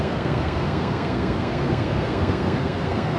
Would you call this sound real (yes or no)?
no